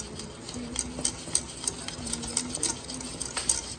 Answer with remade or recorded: recorded